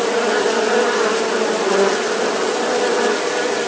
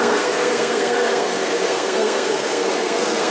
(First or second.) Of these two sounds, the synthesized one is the second